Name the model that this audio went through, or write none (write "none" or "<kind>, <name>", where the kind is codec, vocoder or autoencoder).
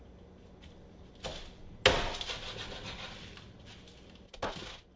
none